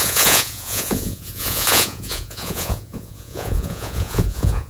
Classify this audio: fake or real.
fake